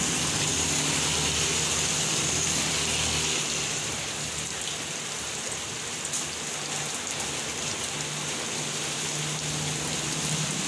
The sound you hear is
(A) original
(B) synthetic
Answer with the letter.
A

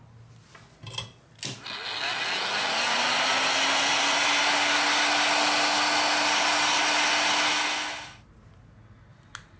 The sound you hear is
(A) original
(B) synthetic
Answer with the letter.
A